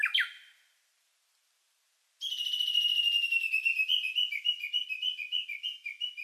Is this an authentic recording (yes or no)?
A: yes